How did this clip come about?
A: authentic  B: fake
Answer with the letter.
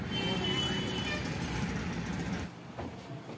A